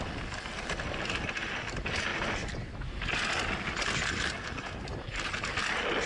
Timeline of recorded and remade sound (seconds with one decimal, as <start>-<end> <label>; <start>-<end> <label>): 0.0-4.9 recorded; 4.9-5.4 remade; 5.4-6.1 recorded